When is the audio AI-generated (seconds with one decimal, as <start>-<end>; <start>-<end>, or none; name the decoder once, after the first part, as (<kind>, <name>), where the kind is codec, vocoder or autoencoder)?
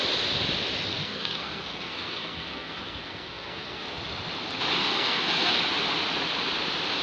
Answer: 0.9-4.0 (codec, SNAC); 4.8-5.6